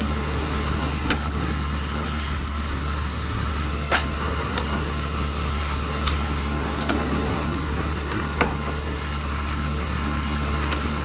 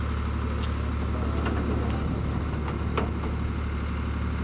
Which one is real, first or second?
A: second